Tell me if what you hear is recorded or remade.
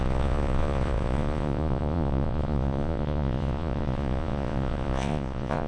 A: remade